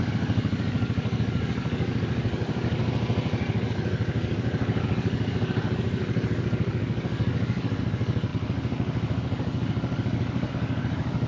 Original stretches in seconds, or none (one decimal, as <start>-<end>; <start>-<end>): 2.8-3.5